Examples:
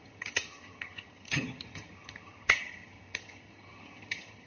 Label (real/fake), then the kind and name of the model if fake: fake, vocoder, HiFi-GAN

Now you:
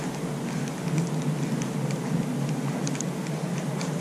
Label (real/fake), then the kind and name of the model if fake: real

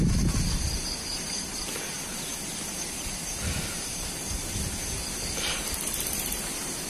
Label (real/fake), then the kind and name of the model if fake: real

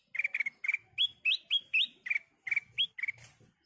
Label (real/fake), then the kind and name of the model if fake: real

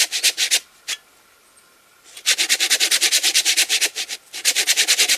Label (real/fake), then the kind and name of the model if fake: real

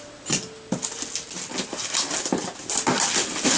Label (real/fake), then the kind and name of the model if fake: real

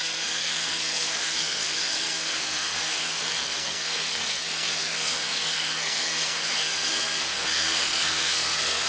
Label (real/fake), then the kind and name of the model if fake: fake, codec, SNAC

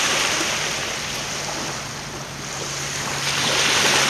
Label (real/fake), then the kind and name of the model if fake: real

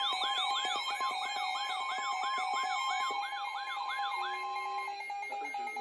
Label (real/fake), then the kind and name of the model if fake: real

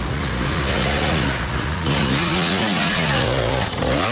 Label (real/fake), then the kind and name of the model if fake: fake, vocoder, Vocos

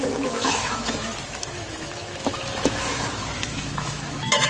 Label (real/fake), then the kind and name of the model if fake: fake, autoencoder, DAC-VAE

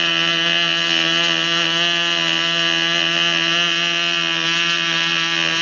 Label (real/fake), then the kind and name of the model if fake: real